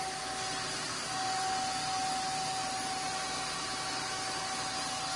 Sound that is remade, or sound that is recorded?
recorded